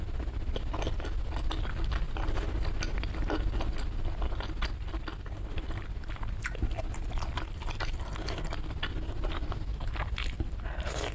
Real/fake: real